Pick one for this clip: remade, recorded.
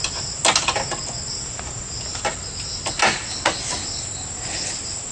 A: recorded